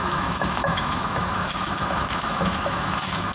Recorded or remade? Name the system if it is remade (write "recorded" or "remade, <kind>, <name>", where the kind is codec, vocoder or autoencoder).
remade, autoencoder, DAC-VAE